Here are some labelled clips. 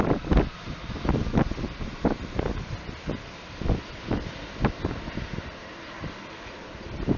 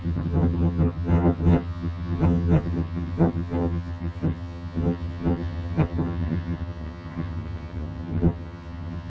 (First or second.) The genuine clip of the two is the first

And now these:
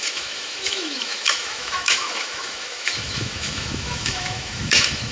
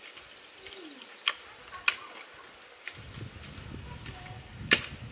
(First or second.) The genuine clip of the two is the second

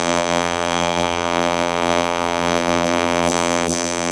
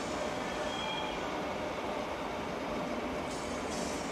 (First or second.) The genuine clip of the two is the second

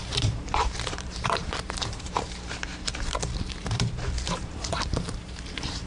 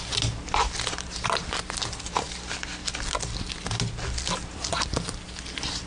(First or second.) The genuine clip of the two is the second